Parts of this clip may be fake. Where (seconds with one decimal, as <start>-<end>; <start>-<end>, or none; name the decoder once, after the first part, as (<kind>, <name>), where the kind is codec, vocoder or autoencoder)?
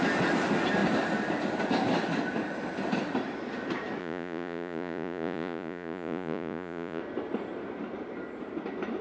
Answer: 4.0-7.0 (vocoder, Vocos)